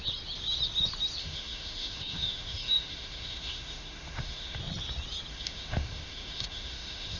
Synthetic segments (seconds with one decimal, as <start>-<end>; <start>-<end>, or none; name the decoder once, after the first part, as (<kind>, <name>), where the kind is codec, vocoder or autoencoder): 1.2-4.6 (autoencoder, DAC-VAE); 5.3-7.2